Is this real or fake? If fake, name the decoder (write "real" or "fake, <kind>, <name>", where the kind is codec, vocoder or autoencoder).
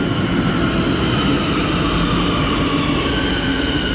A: real